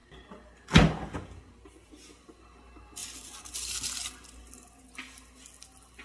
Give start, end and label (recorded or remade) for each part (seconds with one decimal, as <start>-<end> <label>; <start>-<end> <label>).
0.0-6.0 recorded